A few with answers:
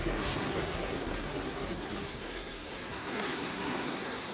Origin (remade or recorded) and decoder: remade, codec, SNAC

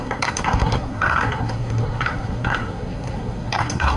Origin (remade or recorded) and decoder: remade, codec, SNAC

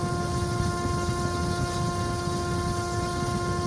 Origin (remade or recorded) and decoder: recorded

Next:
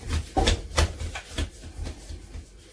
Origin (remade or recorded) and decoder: recorded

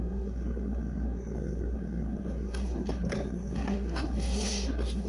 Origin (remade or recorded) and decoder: remade, codec, SNAC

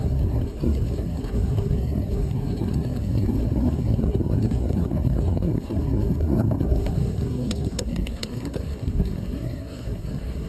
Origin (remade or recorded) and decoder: remade, codec, SNAC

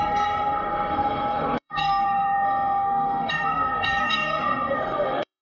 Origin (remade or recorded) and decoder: remade, codec, SNAC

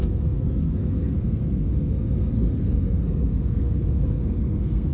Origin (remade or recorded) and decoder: remade, codec, SNAC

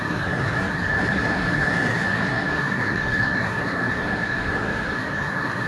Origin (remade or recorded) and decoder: remade, codec, SNAC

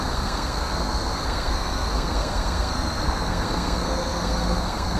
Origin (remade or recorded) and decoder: remade, codec, SNAC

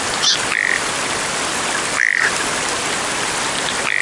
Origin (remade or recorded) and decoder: recorded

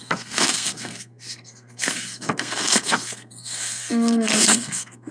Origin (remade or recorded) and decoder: remade, codec, SNAC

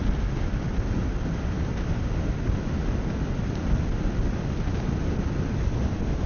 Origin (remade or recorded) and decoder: recorded